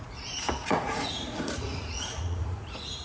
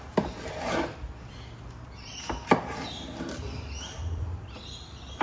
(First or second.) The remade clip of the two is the first